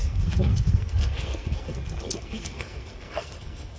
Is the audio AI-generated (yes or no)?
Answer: yes